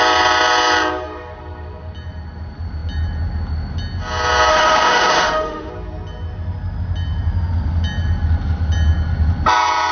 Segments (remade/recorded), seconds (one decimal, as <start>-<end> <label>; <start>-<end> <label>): 0.0-4.5 recorded; 4.5-5.7 remade; 5.7-9.9 recorded